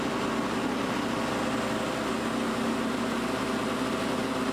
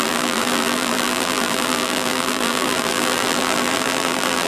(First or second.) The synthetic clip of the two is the second